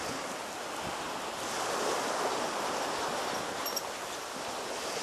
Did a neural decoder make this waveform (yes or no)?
no